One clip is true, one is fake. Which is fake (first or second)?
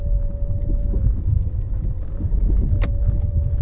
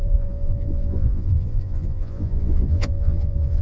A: second